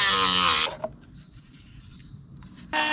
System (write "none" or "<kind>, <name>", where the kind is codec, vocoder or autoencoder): none